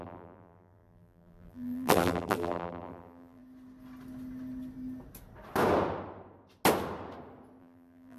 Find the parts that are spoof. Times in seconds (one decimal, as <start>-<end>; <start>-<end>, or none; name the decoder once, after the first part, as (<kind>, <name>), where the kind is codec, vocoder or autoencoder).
0.0-3.4 (vocoder, BigVGAN v2); 7.6-8.2